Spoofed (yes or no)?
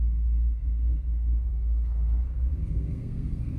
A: yes